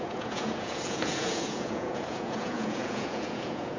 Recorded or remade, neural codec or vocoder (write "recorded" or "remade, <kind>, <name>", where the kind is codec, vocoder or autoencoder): remade, vocoder, Vocos